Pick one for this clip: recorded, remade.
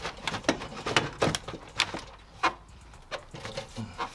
recorded